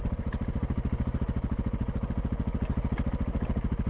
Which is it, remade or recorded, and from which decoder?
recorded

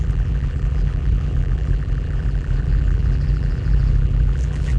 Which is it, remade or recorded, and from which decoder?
remade, vocoder, BigVGAN v2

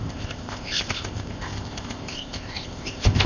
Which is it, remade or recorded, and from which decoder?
remade, codec, ZipCodec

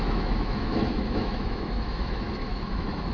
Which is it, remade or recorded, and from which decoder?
remade, autoencoder, DAC-VAE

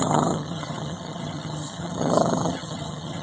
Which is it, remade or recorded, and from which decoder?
remade, vocoder, HiFi-GAN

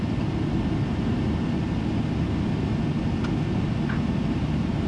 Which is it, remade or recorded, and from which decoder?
recorded